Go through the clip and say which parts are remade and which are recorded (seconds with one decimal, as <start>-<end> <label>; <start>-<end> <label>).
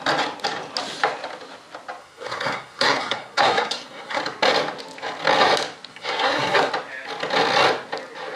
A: 0.0-2.0 recorded; 2.0-4.2 remade; 4.2-5.9 recorded; 5.9-6.7 remade; 6.7-8.4 recorded